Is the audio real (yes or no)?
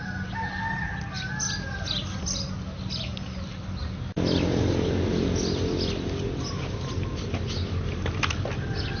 yes